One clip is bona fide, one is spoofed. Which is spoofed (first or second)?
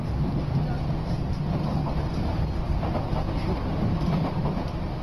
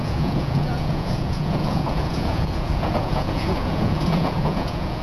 second